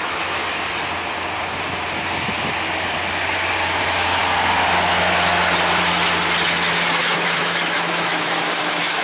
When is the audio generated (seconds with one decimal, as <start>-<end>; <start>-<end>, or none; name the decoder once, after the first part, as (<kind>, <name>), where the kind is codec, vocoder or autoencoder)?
0.0-0.4 (autoencoder, DAC-VAE); 3.8-4.2; 7.0-9.0